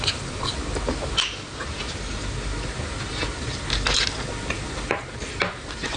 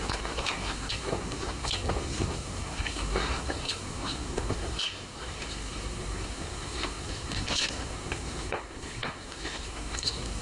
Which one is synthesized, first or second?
second